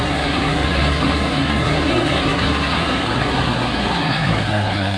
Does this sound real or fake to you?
fake